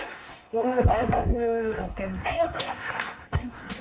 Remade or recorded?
remade